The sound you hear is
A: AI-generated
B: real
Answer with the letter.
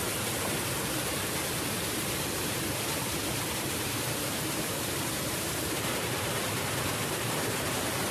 A